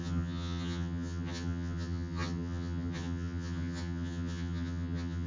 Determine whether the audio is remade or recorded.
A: remade